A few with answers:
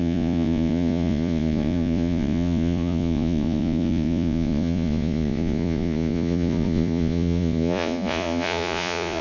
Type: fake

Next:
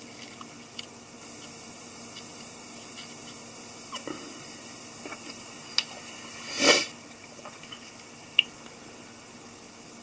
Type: real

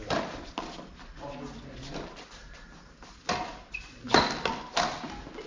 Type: real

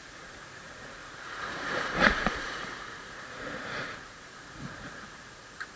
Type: fake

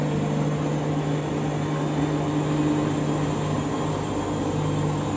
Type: real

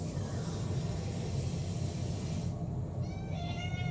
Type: real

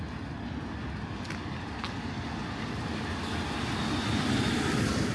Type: real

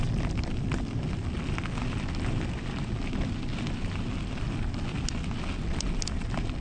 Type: real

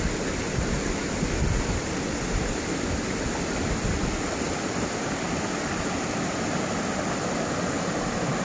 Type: real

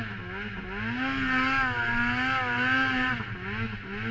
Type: real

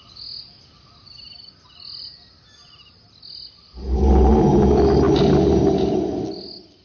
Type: real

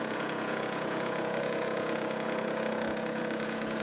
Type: fake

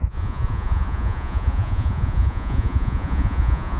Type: fake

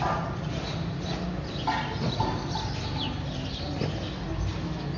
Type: real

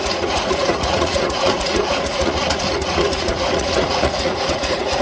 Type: fake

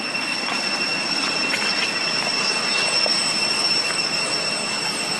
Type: real